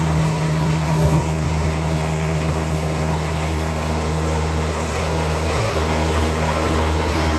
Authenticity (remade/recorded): remade